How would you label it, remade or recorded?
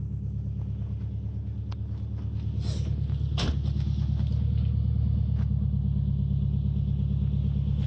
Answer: recorded